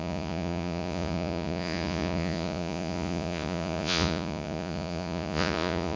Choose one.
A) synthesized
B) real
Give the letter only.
A